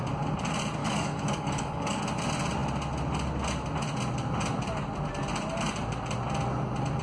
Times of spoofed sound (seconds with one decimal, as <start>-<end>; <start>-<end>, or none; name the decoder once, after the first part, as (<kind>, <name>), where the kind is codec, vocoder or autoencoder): 0.8-2.0 (codec, DAC)